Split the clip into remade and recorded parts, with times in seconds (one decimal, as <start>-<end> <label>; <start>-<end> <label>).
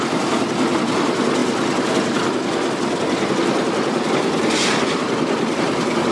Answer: 0.0-6.1 recorded